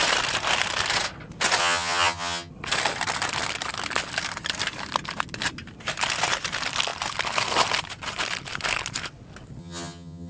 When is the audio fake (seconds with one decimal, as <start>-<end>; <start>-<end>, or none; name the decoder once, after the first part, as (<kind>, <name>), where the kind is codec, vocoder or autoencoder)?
1.6-2.5 (vocoder, HiFi-GAN); 9.6-10.3

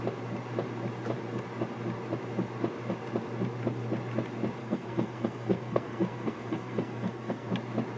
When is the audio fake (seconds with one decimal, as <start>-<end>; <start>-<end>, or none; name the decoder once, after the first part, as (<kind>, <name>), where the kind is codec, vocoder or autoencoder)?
4.6-7.5 (codec, SNAC)

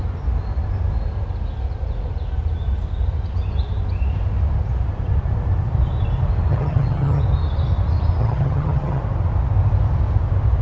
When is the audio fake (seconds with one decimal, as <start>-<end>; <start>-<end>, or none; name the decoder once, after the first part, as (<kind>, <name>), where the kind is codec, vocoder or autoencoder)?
6.5-7.2 (vocoder, HiFi-GAN); 8.2-9.0

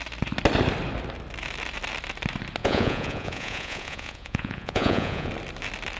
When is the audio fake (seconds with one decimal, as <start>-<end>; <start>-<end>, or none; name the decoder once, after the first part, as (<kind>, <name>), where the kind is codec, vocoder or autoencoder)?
2.6-5.3 (vocoder, Vocos)

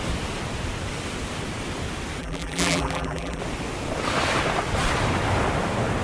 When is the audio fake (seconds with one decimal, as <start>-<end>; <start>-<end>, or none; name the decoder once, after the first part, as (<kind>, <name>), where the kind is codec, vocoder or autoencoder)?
2.2-3.4 (vocoder, BigVGAN v2)